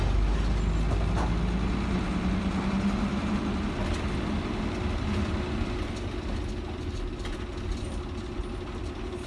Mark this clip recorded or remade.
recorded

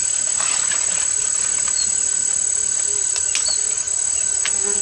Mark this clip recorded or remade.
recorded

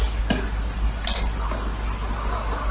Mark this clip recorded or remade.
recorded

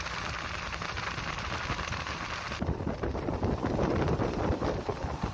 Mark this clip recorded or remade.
recorded